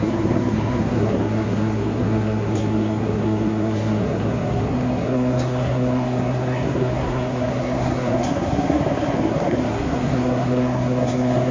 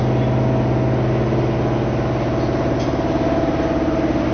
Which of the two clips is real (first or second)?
second